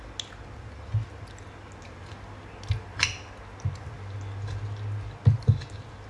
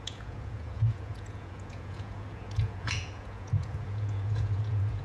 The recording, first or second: first